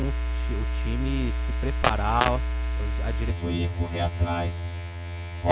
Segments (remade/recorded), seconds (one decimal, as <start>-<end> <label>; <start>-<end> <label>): 0.0-3.3 recorded; 3.3-5.5 remade